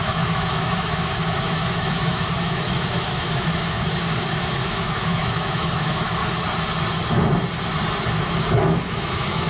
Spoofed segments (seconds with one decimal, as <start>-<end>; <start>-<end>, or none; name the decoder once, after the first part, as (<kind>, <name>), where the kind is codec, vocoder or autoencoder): 0.0-6.2 (autoencoder, DAC-VAE); 8.1-9.5